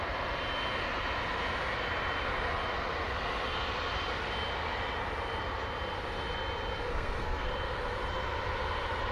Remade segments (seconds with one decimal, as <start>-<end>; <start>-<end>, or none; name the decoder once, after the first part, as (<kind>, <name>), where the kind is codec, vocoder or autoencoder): 6.9-7.5 (codec, SNAC)

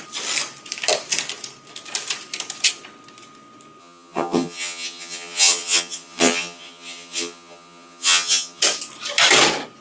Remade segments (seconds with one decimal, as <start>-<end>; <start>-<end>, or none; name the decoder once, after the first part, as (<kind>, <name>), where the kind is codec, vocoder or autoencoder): 3.8-8.6 (vocoder, HiFi-GAN)

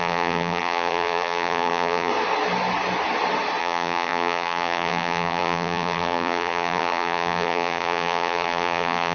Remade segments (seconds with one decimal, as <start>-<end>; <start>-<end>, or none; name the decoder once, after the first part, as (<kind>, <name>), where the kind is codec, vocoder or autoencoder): 0.0-2.1 (vocoder, BigVGAN v2); 3.6-9.1

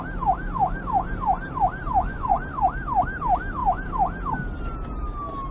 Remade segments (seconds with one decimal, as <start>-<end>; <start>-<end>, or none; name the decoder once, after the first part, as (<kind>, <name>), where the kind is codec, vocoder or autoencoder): 2.1-2.6 (vocoder, Vocos)

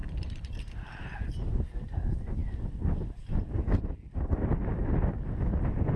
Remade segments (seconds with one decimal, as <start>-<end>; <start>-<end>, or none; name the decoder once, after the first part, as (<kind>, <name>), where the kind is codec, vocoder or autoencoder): 0.0-1.3 (vocoder, BigVGAN v2); 2.4-3.6

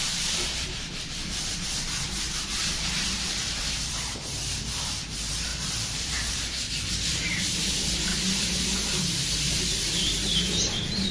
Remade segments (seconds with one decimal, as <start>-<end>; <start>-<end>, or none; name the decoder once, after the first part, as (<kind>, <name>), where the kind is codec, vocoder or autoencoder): 0.0-8.1 (vocoder, BigVGAN v2); 9.2-11.1

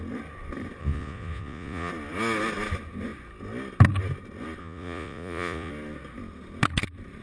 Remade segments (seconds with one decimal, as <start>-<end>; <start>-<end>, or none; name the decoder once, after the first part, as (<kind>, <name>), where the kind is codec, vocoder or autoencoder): 0.8-1.9 (vocoder, Vocos); 4.6-5.7